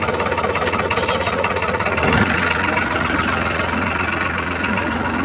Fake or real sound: fake